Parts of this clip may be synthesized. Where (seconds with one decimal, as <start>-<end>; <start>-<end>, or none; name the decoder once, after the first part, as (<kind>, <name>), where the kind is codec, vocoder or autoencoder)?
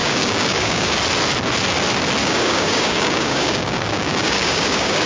0.0-1.0 (codec, DAC); 2.2-5.1